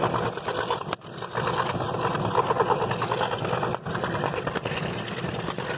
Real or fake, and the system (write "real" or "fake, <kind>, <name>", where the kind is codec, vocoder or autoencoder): real